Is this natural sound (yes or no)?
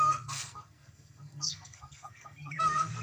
no